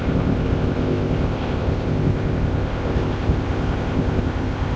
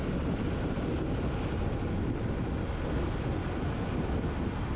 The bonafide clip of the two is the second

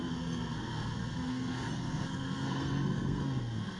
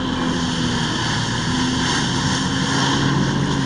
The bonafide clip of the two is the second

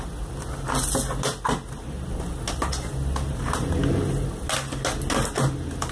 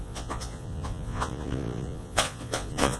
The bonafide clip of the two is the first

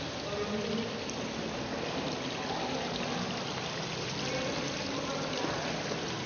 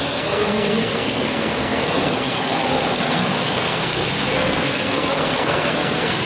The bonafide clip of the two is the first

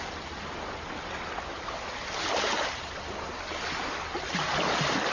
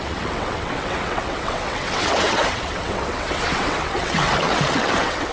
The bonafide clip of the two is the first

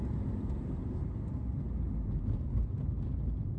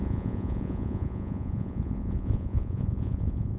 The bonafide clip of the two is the first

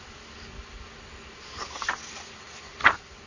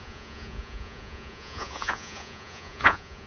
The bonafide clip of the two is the first